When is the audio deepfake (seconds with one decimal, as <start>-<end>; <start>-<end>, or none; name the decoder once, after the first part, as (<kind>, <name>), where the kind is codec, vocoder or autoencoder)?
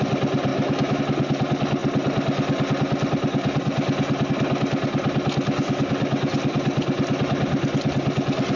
0.5-1.0 (autoencoder, DAC-VAE)